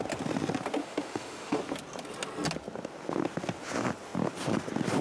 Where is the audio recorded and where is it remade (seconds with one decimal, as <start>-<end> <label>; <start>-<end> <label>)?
0.0-0.8 recorded; 0.8-1.6 remade; 1.6-5.0 recorded